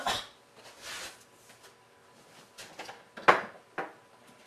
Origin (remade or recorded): recorded